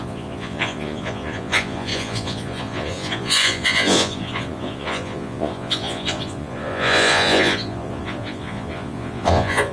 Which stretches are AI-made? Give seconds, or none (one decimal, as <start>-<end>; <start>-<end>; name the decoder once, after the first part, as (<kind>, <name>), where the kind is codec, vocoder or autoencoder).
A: 0.0-9.7 (vocoder, Vocos)